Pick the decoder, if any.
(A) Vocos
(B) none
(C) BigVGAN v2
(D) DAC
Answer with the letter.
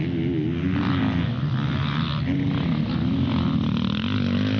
B